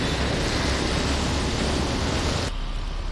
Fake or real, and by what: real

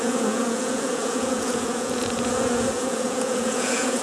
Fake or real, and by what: fake, vocoder, Vocos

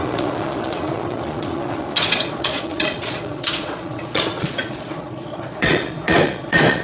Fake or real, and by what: fake, vocoder, Vocos